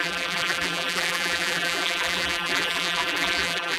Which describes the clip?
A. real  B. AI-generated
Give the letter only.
B